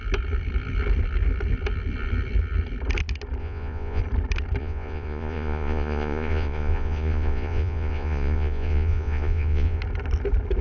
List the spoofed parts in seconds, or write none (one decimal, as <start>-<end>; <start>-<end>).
3.4-4.0; 4.6-9.8